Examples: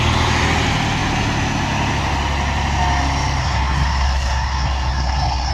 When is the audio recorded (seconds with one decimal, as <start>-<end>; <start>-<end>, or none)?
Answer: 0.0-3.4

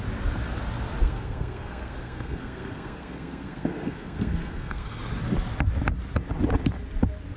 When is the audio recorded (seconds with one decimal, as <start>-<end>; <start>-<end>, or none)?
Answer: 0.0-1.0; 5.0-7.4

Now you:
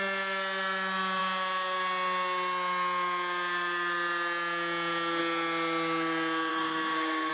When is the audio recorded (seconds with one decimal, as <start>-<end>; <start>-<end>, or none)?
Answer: 0.0-6.5

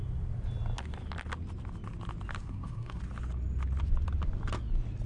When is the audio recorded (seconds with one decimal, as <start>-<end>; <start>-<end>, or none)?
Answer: 0.0-2.4; 3.0-5.1

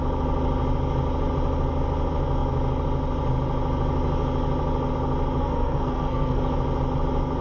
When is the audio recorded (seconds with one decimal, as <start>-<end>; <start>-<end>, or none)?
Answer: 0.0-5.4; 6.4-7.4